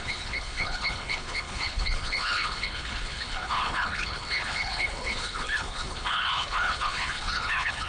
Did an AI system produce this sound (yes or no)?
yes